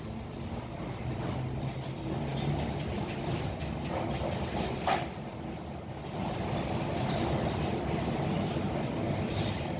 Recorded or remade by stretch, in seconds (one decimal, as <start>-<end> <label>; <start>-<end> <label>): 0.0-9.8 recorded